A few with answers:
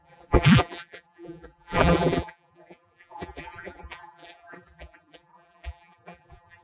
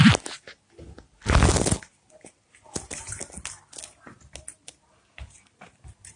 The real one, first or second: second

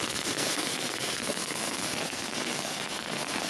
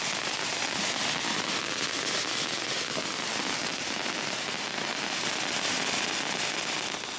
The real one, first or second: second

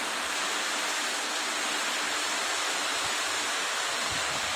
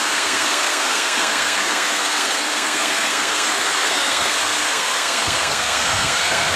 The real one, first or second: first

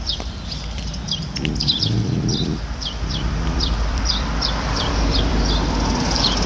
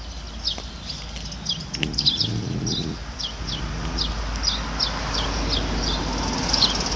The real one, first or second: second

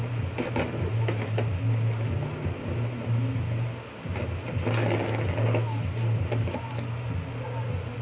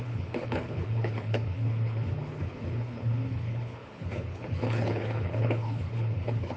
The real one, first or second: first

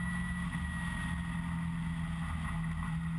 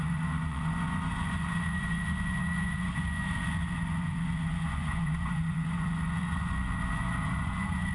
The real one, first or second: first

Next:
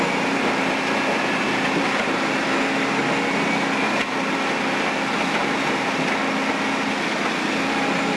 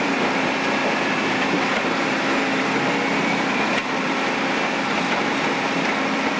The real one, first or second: first